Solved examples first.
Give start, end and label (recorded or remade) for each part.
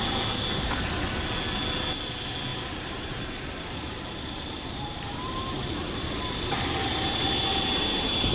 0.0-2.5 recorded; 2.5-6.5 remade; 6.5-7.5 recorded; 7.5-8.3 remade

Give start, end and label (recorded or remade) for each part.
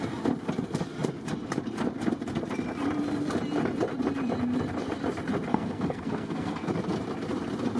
0.0-5.5 recorded; 5.5-6.7 remade; 6.7-7.8 recorded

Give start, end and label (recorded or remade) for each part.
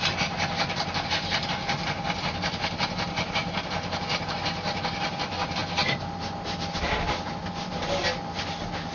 0.0-8.9 recorded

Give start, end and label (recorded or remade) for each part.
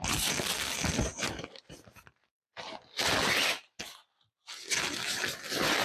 0.0-1.1 recorded; 1.1-1.7 remade; 1.7-5.8 recorded